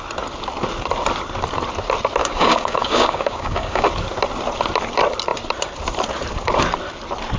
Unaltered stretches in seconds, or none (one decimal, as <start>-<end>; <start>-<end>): 0.0-2.2; 3.9-7.4